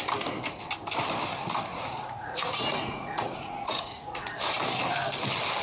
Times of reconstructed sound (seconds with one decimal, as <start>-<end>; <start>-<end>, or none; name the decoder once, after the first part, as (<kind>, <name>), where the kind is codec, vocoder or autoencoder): 1.7-4.4 (vocoder, Vocos)